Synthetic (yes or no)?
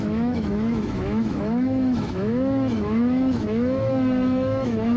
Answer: yes